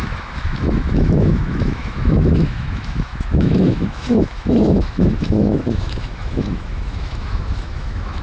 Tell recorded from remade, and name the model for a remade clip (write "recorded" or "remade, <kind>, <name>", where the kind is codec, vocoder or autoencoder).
remade, autoencoder, DAC-VAE